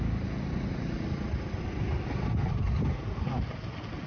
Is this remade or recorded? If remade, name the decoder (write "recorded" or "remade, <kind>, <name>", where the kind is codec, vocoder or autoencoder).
recorded